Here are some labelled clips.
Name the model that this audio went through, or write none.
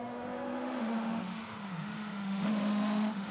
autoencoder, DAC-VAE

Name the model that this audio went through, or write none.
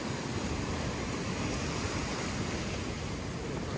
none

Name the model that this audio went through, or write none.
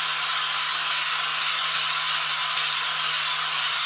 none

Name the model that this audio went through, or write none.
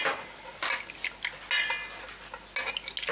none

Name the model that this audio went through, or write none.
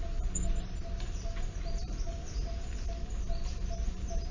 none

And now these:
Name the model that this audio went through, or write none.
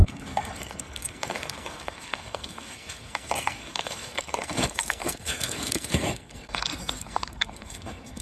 codec, SNAC